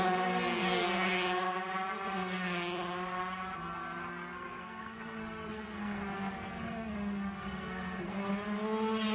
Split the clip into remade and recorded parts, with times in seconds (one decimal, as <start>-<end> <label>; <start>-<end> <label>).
0.0-4.1 recorded; 4.1-8.3 remade; 8.3-9.1 recorded